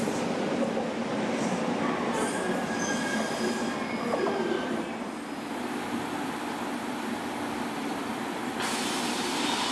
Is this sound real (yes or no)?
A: yes